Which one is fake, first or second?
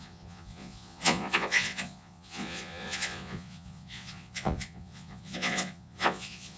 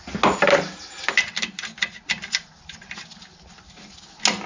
first